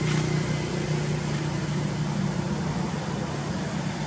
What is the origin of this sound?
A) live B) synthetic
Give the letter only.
A